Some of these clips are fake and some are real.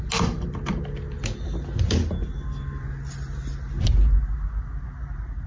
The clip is real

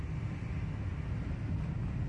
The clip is real